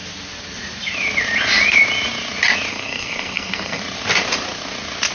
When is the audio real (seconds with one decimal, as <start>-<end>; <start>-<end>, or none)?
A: 0.0-2.7; 3.8-5.1